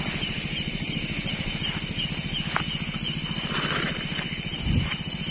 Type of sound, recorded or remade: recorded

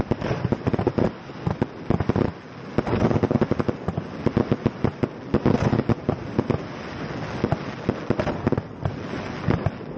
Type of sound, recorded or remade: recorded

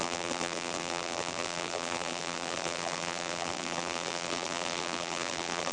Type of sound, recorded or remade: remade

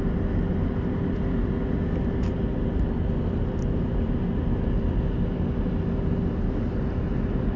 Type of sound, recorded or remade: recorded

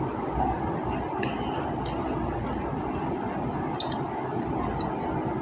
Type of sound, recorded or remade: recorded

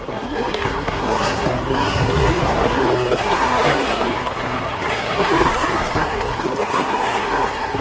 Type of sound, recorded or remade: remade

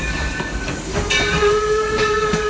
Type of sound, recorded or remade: remade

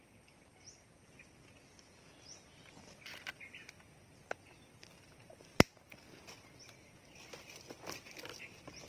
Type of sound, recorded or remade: recorded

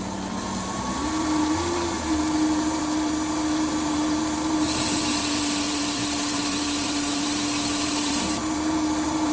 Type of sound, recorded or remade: remade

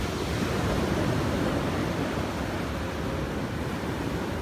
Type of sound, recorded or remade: recorded